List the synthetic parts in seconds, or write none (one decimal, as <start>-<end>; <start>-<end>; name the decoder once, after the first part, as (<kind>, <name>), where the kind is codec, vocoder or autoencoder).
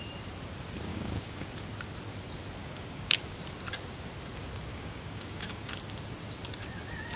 0.9-1.5 (codec, DAC); 2.6-3.2; 4.7-5.7